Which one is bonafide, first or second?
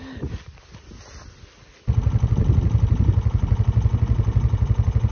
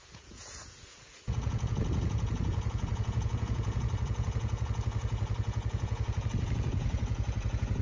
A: first